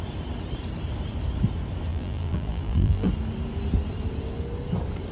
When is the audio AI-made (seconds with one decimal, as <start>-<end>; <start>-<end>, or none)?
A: 1.9-3.1